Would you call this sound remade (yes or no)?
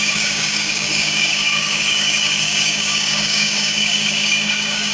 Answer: yes